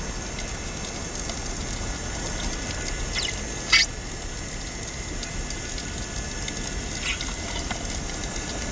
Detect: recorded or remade recorded